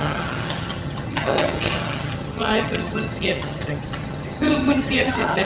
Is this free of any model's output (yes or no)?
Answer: no